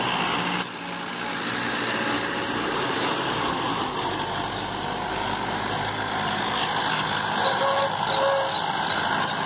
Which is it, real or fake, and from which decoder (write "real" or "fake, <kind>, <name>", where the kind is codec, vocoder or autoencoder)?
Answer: real